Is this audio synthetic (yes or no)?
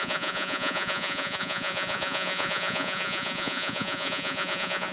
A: yes